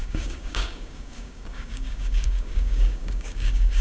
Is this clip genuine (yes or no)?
no